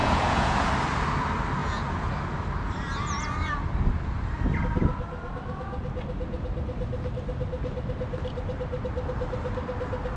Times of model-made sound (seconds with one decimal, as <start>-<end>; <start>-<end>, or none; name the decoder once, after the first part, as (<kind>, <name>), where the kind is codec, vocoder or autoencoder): 0.0-0.7 (vocoder, Vocos); 1.6-2.1

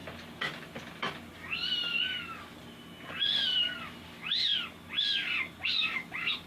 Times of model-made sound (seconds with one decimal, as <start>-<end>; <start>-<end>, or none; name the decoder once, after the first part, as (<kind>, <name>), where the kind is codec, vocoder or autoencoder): none

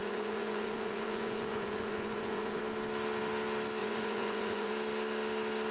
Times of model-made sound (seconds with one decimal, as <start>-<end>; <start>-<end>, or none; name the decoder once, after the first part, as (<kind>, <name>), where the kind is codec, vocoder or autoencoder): 0.0-2.6 (vocoder, Vocos); 3.8-4.7

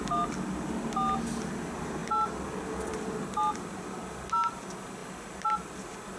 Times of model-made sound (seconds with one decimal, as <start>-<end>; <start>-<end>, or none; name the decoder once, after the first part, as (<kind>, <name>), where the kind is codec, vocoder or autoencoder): none

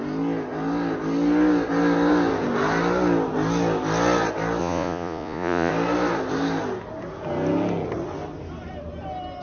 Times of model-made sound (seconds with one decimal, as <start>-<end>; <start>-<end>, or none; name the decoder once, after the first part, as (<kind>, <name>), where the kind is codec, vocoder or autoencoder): 4.6-5.7 (vocoder, Vocos)

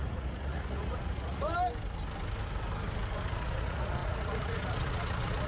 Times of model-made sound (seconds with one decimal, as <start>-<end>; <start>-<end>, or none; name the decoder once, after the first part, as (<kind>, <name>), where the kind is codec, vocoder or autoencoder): 0.0-1.5 (vocoder, Vocos); 3.2-5.5

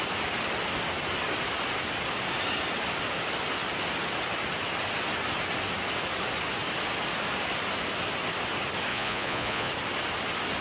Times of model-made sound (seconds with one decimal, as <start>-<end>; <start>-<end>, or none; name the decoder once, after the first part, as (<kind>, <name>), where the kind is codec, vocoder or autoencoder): 8.9-9.7 (vocoder, Vocos)

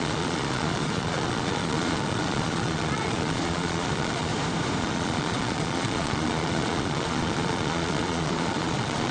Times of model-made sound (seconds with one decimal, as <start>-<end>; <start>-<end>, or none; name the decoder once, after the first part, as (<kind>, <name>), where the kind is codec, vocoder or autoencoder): 0.0-4.3 (vocoder, Vocos); 4.8-9.1